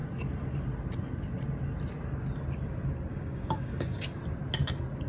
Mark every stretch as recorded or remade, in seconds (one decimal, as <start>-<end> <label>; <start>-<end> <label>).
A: 0.0-3.1 recorded; 3.1-4.2 remade; 4.2-5.1 recorded